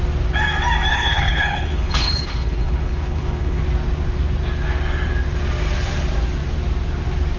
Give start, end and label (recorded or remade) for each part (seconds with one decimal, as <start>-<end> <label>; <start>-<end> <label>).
0.0-0.9 recorded; 0.9-3.6 remade; 3.6-7.4 recorded